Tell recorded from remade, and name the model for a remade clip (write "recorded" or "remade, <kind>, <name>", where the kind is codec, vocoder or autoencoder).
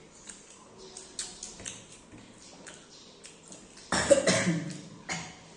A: recorded